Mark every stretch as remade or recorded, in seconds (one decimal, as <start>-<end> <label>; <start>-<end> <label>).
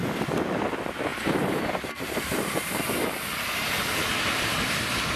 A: 0.0-1.1 recorded; 1.1-4.0 remade; 4.0-5.2 recorded